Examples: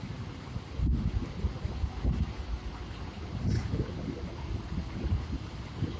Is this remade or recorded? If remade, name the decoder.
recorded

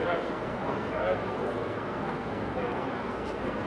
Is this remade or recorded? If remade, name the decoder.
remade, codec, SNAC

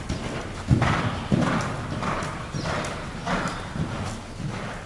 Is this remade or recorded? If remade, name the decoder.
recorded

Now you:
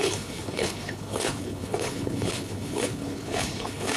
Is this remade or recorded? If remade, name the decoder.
remade, codec, HILCodec